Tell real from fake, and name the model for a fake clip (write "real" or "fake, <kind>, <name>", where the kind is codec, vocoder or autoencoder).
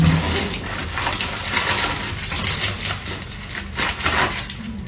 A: real